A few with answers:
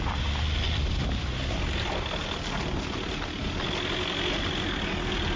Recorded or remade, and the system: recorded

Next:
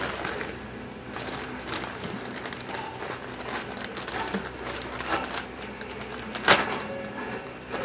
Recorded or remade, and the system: recorded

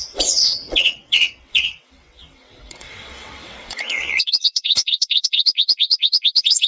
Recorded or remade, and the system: remade, vocoder, WaveNeXt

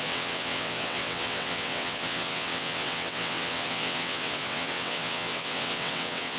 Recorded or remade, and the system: remade, vocoder, WaveNeXt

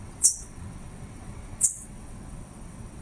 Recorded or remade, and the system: remade, vocoder, WaveNeXt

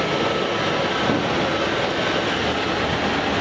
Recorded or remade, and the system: recorded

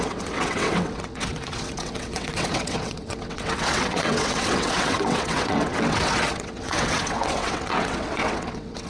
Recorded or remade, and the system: remade, vocoder, WaveNeXt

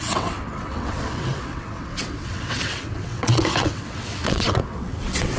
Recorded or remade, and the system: remade, vocoder, WaveNeXt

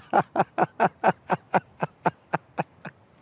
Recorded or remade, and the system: recorded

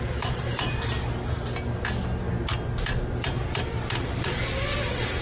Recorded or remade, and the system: recorded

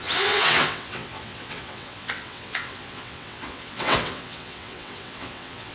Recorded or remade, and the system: remade, vocoder, WaveNeXt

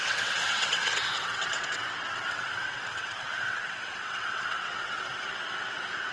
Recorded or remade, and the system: remade, vocoder, WaveNeXt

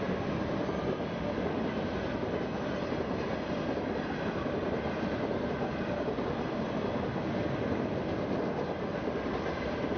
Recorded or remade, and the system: recorded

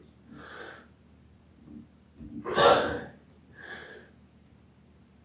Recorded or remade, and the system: recorded